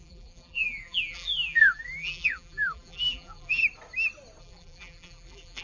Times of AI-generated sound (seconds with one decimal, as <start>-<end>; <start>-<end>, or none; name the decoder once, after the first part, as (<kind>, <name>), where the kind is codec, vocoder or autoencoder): 0.0-3.6 (vocoder, BigVGAN v2); 4.4-5.6